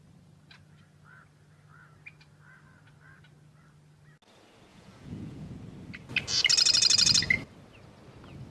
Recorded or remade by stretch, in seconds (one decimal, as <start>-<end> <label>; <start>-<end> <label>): 0.0-4.7 recorded; 4.7-5.5 remade; 5.5-8.5 recorded